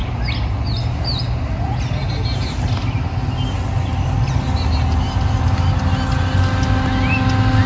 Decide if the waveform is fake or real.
real